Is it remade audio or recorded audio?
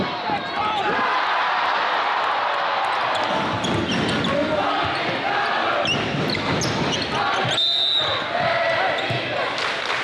recorded